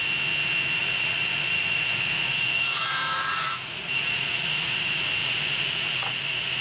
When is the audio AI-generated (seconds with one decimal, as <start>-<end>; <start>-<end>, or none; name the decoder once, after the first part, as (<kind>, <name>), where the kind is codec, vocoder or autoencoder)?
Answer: 0.8-4.8 (vocoder, Vocos); 5.2-6.6

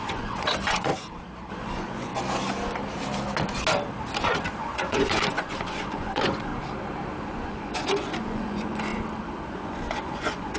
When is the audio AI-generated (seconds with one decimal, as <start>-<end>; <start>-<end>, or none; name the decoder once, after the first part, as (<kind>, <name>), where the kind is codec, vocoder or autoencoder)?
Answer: 0.0-0.9 (vocoder, Vocos); 1.5-2.1; 4.6-6.5; 7.2-8.9; 9.5-10.6

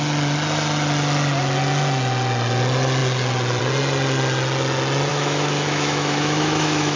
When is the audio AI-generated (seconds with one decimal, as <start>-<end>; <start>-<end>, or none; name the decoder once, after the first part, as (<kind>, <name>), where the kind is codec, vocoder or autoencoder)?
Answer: 5.1-7.0 (autoencoder, DAC-VAE)

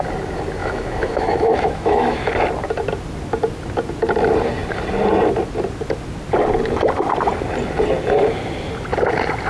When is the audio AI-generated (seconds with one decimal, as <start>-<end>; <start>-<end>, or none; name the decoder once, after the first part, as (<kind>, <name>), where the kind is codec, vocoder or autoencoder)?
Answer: 0.6-2.3 (autoencoder, DAC-VAE)